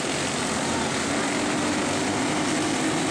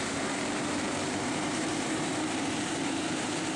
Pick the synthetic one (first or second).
second